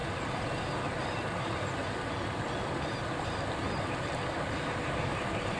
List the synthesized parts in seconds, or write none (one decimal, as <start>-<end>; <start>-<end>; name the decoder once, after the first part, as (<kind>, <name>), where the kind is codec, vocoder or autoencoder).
none